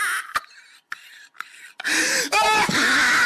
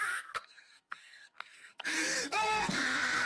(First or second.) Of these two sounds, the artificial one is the second